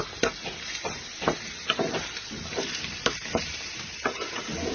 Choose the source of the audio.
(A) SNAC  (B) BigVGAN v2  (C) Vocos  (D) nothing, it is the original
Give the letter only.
B